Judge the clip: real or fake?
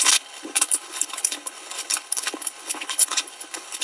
fake